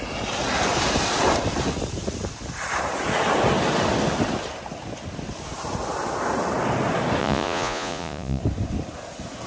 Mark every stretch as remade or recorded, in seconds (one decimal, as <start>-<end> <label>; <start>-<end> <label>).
0.0-7.2 recorded; 7.2-8.4 remade; 8.4-9.5 recorded